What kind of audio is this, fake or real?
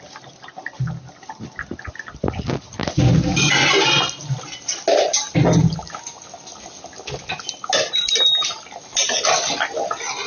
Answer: real